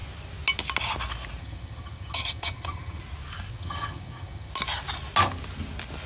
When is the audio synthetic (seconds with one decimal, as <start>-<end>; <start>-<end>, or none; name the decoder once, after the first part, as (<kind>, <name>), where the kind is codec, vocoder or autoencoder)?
1.4-3.0 (vocoder, HiFi-GAN); 3.5-4.5